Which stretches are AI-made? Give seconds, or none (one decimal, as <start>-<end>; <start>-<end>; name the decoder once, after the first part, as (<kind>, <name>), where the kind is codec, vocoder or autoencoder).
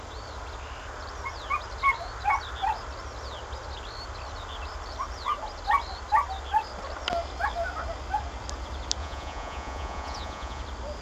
9.0-10.6 (vocoder, Vocos)